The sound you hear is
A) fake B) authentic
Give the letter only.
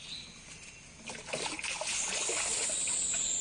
B